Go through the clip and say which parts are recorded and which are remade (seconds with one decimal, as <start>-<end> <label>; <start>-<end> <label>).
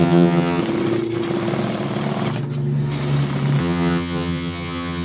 0.0-0.6 remade; 0.6-3.6 recorded; 3.6-5.0 remade